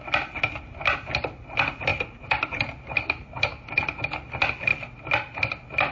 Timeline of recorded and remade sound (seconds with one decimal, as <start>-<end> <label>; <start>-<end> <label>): 0.0-1.9 recorded; 1.9-4.0 remade; 4.0-5.9 recorded